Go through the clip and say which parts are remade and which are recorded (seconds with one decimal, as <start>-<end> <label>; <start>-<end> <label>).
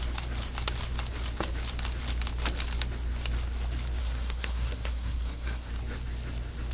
0.0-4.0 recorded; 4.0-5.7 remade; 5.7-6.7 recorded